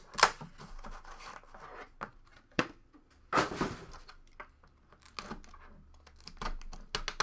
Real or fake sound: real